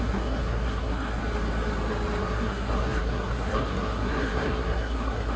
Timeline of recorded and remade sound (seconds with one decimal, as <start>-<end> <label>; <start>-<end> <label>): 0.0-1.2 remade; 1.2-2.2 recorded; 2.2-5.4 remade